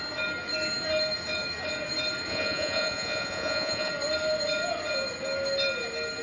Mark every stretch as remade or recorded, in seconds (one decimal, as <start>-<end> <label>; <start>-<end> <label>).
0.0-2.3 recorded; 2.3-3.9 remade; 3.9-6.2 recorded